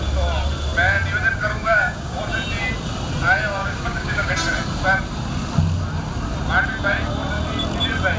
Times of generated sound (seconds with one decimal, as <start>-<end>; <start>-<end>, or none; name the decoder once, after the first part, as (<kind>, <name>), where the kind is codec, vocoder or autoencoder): 1.4-2.2 (codec, DAC); 3.6-4.3